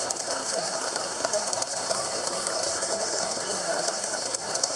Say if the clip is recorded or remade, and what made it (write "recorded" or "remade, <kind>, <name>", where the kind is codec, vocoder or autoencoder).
remade, codec, SNAC